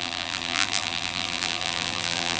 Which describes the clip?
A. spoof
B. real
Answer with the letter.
A